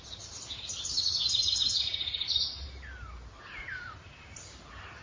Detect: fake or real real